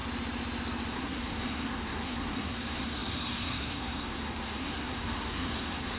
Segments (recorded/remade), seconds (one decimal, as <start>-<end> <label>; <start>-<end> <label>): 0.0-0.9 recorded; 0.9-6.0 remade